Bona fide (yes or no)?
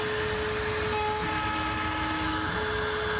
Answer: yes